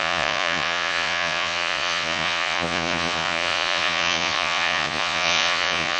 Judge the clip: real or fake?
fake